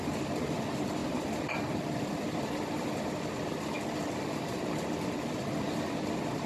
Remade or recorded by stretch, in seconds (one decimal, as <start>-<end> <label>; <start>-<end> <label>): 0.0-6.5 recorded